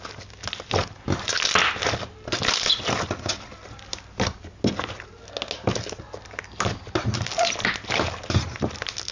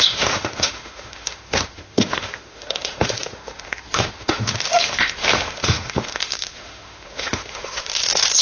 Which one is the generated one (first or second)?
second